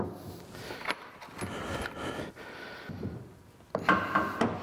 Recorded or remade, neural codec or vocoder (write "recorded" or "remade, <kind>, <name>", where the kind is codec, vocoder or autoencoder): recorded